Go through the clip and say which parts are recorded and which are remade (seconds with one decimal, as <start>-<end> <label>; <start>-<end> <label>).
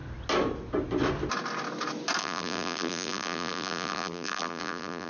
0.0-2.2 recorded; 2.2-5.1 remade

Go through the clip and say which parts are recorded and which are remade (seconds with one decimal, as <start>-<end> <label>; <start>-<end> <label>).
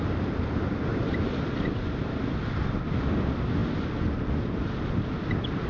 0.0-0.9 recorded; 0.9-1.5 remade; 1.5-5.7 recorded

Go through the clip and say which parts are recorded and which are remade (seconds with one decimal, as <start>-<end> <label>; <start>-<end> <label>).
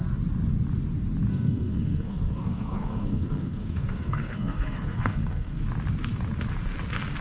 0.0-1.3 recorded; 1.3-5.6 remade; 5.6-7.2 recorded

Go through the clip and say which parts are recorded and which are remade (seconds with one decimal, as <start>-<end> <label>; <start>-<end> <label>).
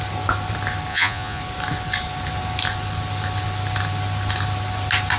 0.0-0.9 recorded; 0.9-1.4 remade; 1.4-5.2 recorded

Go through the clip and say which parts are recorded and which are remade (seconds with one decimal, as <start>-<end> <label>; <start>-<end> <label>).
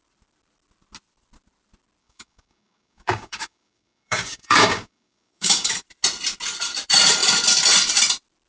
0.0-2.0 recorded; 2.0-5.7 remade; 5.7-8.5 recorded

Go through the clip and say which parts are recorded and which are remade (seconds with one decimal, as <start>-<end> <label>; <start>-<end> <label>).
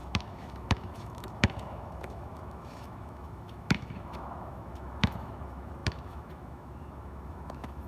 0.0-7.9 remade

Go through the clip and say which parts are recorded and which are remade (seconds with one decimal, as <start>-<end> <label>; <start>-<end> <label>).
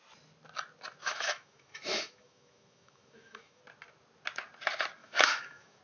0.0-1.0 recorded; 1.0-3.6 remade; 3.6-5.0 recorded; 5.0-5.8 remade